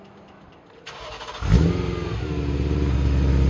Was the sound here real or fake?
real